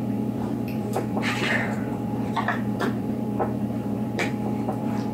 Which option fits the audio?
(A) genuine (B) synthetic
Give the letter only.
B